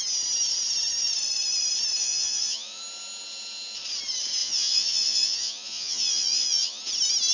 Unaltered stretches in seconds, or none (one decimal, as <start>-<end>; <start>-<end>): 0.0-2.0; 2.8-4.4; 6.8-7.3